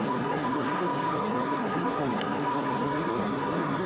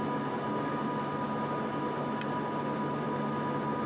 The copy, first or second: first